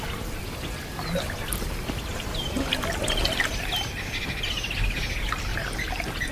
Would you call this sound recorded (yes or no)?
yes